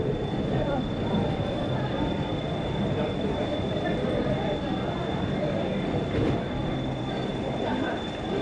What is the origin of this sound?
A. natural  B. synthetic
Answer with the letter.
B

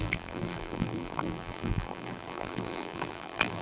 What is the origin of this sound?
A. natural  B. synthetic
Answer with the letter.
B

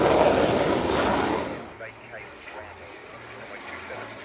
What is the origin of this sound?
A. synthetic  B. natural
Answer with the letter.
B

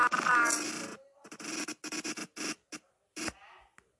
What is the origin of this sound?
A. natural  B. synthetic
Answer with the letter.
A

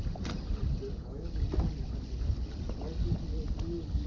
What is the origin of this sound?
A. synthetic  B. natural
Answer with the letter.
B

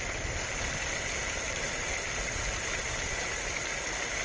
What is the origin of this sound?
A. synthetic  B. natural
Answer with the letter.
B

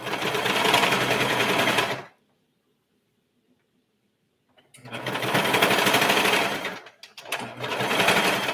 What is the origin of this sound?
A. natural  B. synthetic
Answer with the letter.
A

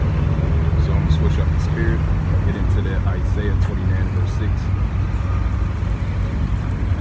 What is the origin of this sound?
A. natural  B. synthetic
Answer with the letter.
A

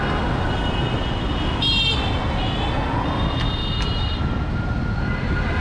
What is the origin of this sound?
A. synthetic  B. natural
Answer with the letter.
B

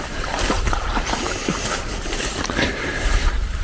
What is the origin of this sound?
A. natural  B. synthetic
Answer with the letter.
B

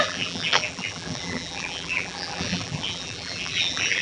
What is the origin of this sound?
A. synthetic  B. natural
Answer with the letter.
A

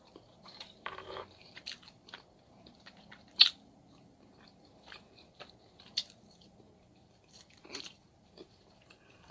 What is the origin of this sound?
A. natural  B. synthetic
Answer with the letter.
B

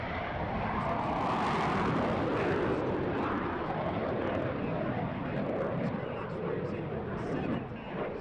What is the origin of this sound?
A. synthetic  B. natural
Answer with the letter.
B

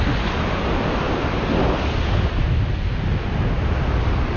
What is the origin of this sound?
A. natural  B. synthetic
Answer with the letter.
A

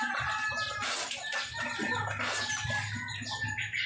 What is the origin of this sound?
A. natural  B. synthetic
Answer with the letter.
A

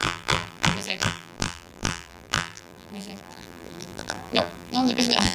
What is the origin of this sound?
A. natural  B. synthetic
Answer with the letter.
B